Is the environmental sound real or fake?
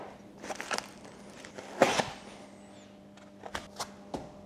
real